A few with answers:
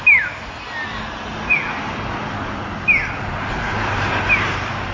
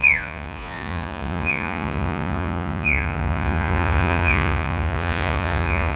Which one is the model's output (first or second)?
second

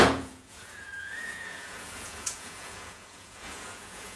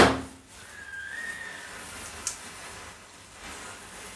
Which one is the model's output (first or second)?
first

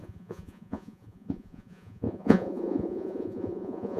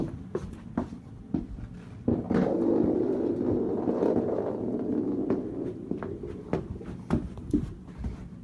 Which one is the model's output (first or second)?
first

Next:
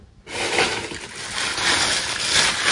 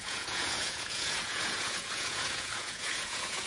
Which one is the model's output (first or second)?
second